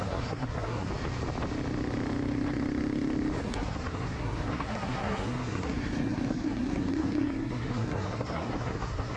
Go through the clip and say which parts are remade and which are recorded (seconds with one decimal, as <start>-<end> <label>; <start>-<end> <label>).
0.0-0.9 remade; 0.9-3.4 recorded; 3.4-9.2 remade